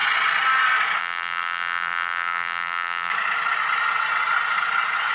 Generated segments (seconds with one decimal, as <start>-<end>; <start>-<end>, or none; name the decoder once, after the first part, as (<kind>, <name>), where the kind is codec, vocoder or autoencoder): 1.0-3.1 (vocoder, BigVGAN v2)